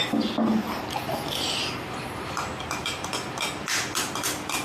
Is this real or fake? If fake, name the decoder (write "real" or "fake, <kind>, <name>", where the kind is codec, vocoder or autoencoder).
real